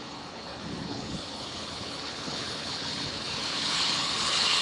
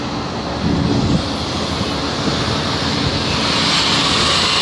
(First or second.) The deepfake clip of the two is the first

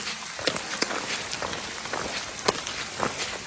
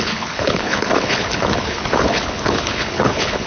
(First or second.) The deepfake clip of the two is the second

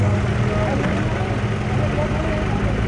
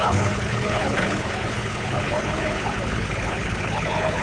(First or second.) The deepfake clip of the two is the second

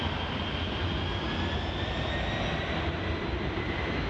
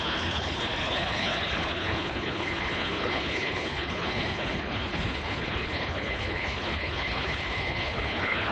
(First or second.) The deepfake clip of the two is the second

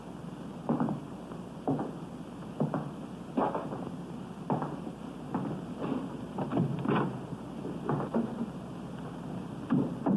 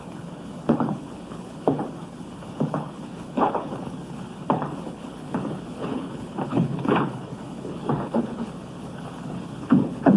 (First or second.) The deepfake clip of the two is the second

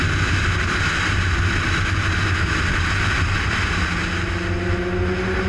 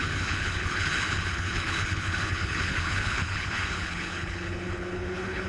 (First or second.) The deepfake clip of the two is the second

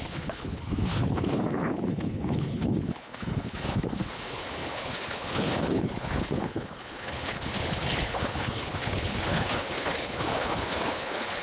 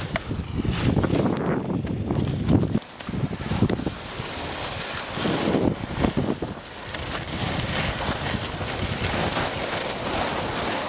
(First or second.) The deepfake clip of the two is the first